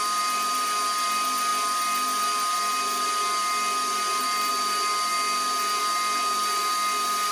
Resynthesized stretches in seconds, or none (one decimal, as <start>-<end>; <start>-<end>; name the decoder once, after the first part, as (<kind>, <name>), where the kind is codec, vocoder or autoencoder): none